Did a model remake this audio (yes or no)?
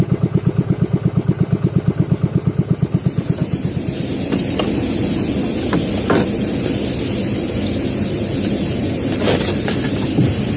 no